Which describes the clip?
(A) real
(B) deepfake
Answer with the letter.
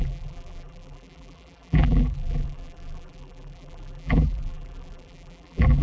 B